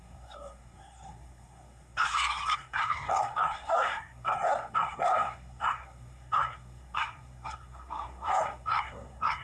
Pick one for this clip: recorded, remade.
remade